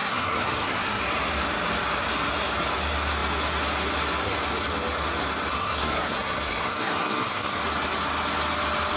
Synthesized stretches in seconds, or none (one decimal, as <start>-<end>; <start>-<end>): 0.0-1.0; 5.5-7.6

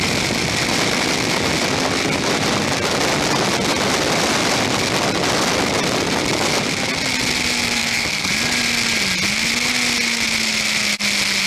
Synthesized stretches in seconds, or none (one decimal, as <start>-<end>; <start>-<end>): 7.8-8.3